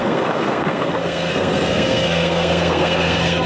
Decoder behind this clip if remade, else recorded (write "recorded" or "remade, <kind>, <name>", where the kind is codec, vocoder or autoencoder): remade, codec, SNAC